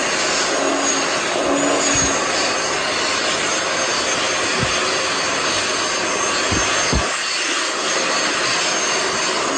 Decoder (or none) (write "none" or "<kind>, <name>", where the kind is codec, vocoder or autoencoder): none